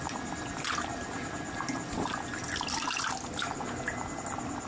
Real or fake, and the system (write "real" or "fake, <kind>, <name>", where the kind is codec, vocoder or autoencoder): real